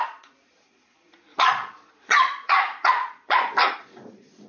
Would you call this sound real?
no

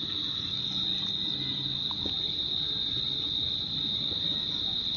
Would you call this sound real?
yes